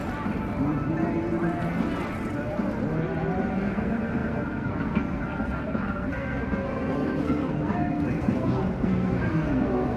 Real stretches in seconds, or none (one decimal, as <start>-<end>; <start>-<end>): 0.0-3.5